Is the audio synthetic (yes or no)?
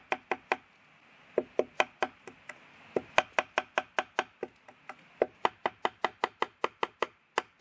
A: no